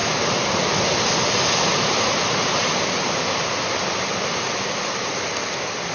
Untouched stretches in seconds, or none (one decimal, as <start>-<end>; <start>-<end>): 0.0-5.9